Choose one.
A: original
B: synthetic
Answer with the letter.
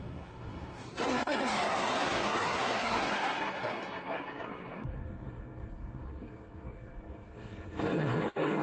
B